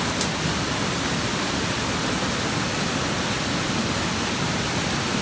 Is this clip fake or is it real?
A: real